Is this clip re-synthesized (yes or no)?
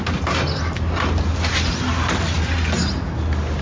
no